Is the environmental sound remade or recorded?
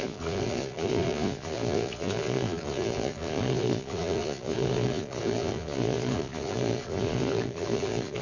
remade